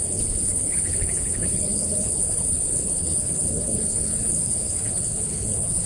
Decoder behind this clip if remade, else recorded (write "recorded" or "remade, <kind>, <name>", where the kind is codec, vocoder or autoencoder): remade, codec, HILCodec